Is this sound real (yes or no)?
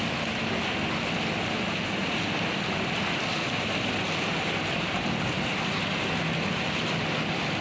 yes